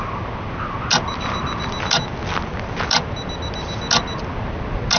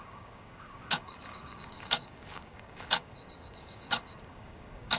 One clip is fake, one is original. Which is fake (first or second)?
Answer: second